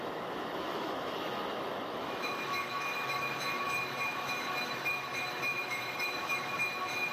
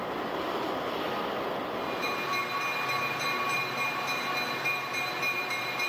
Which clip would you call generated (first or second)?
first